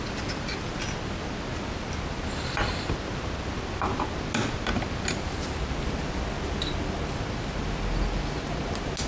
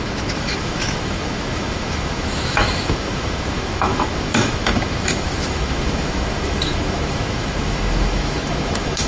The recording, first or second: first